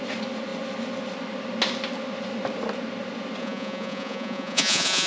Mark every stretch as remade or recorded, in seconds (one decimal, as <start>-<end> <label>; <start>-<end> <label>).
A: 0.0-3.4 recorded; 3.4-5.1 remade